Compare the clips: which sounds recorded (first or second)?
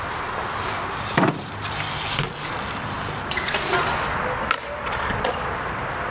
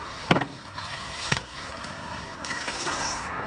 first